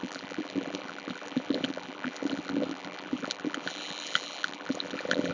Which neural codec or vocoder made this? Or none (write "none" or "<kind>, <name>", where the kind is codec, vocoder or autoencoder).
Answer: vocoder, BigVGAN v2